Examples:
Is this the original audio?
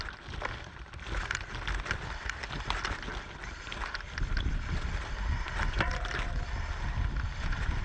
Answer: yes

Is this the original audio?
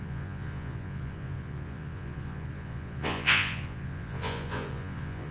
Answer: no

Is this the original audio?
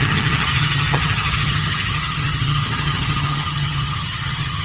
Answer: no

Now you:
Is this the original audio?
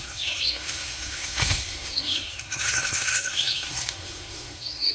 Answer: no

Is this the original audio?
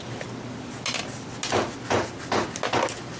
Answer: yes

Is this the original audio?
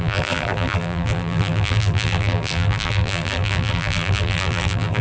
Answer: no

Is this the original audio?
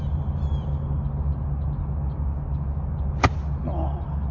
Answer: yes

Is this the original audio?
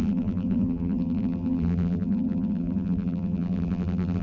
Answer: no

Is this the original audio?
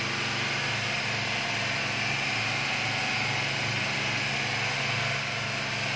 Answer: yes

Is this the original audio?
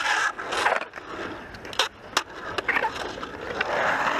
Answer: yes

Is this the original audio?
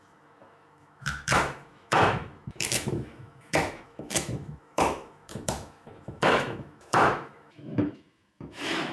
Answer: no